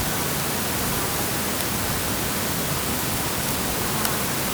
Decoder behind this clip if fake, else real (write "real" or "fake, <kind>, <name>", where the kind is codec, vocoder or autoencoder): real